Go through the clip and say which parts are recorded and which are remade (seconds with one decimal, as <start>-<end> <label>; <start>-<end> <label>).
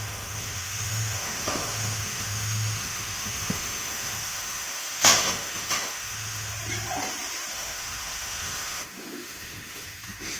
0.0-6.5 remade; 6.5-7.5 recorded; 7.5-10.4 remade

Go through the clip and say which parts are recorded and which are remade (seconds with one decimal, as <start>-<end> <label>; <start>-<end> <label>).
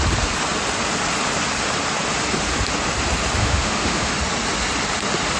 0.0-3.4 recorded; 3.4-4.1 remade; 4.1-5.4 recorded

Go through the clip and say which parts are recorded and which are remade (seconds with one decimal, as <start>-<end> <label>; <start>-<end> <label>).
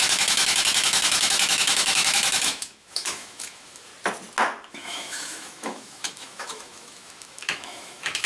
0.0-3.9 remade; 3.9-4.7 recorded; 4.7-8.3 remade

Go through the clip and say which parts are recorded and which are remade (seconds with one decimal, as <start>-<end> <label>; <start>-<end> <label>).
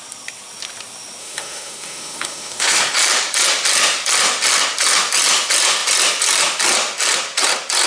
0.0-1.2 recorded; 1.2-2.8 remade; 2.8-7.9 recorded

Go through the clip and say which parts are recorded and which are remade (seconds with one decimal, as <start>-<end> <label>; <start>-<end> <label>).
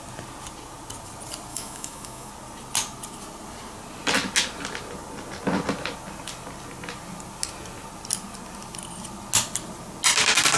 0.0-1.5 recorded; 1.5-2.3 remade; 2.3-10.6 recorded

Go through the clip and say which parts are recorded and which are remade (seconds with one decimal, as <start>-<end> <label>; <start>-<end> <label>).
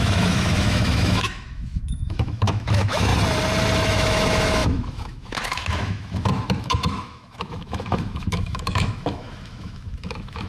0.0-3.1 remade; 3.1-3.8 recorded; 3.8-10.5 remade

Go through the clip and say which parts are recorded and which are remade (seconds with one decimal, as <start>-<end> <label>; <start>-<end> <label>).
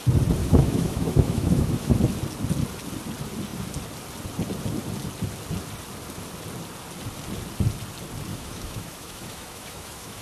0.0-0.4 recorded; 0.4-1.9 remade; 1.9-8.3 recorded; 8.3-10.2 remade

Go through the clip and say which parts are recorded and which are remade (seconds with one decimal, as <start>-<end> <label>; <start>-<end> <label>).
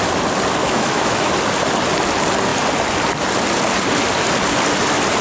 0.0-0.6 recorded; 0.6-1.3 remade; 1.3-5.2 recorded